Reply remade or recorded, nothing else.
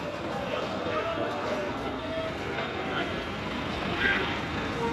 remade